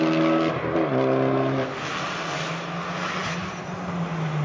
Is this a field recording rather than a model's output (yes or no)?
yes